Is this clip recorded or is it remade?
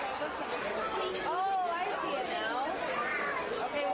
recorded